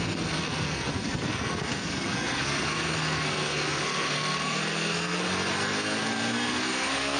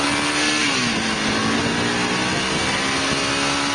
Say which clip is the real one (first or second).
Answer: second